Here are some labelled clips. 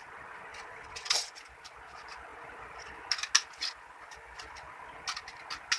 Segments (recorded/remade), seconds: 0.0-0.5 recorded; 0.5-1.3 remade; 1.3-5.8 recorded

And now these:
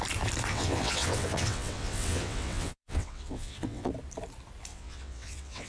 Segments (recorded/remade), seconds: 0.0-0.5 recorded; 0.5-3.9 remade; 3.9-4.7 recorded; 4.7-5.7 remade

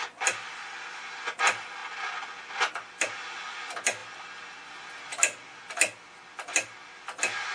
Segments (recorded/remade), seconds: 0.0-7.5 recorded

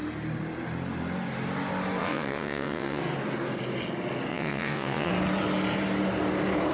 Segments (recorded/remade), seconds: 0.0-2.0 recorded; 2.0-3.0 remade; 3.0-4.3 recorded; 4.3-5.1 remade; 5.1-6.7 recorded

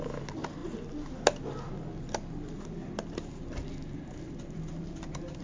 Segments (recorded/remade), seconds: 0.0-5.4 recorded

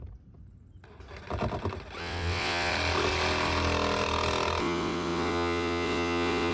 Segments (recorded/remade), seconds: 0.0-2.0 recorded; 2.0-2.7 remade; 2.7-4.6 recorded; 4.6-6.5 remade

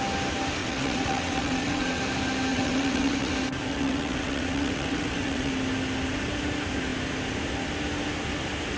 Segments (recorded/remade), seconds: 0.0-0.6 recorded; 0.6-2.0 remade; 2.0-2.5 recorded; 2.5-3.3 remade; 3.3-3.7 recorded; 3.7-5.5 remade; 5.5-8.8 recorded

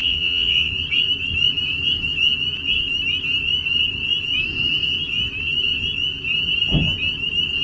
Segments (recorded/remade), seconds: 0.0-0.7 remade; 0.7-7.6 recorded